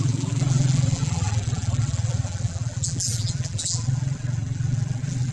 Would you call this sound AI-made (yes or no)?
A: yes